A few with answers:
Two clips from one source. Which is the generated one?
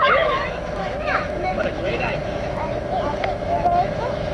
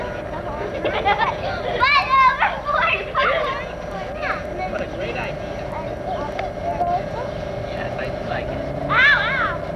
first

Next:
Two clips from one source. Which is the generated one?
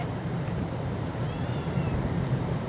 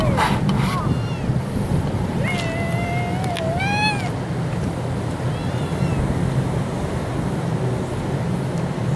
first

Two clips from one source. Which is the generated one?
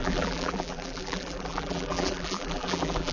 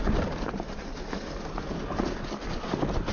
first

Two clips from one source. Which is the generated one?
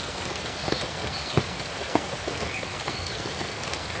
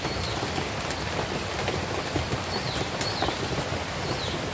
first